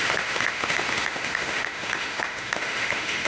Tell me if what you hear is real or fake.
fake